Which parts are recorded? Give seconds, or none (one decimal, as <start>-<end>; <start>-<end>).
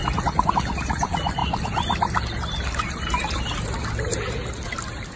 0.0-5.2